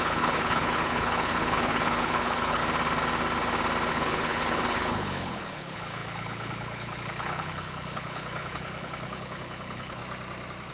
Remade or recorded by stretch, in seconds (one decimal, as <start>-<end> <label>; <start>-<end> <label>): 0.0-2.6 remade; 2.6-3.9 recorded; 3.9-10.0 remade; 10.0-10.7 recorded